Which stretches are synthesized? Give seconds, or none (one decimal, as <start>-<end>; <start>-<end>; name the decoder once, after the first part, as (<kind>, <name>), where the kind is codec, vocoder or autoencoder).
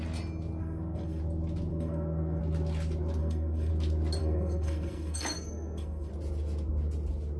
0.6-1.2 (codec, SNAC); 1.7-2.4; 3.2-3.7; 4.2-6.1